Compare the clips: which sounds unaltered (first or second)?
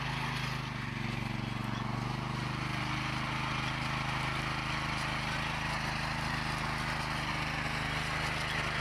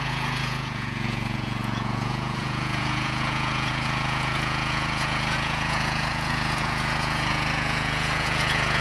first